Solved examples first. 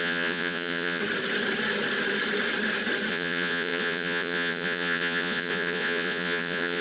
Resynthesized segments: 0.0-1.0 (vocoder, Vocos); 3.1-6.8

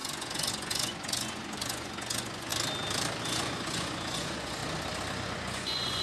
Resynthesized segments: 0.0-2.5 (vocoder, Vocos); 3.2-4.6; 5.1-6.0

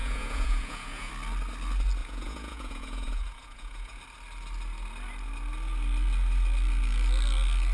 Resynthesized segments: 0.0-1.1 (vocoder, Vocos); 2.0-4.0

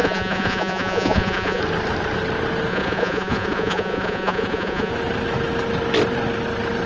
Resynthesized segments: 0.0-1.6 (vocoder, Vocos); 2.7-4.9

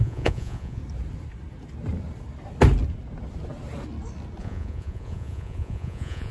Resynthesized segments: 0.0-0.8 (vocoder, Vocos); 4.4-6.3

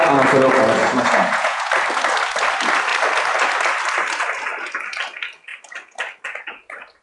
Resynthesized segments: 0.8-1.7 (vocoder, Vocos)

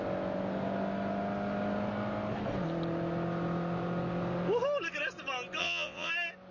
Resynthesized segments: 5.6-6.1 (vocoder, Vocos)